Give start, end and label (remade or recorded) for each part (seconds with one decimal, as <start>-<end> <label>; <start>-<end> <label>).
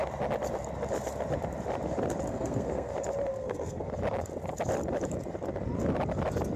0.0-2.3 recorded; 2.3-2.9 remade; 2.9-3.3 recorded; 3.3-3.9 remade; 3.9-6.6 recorded